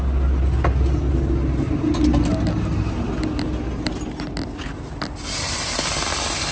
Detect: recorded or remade recorded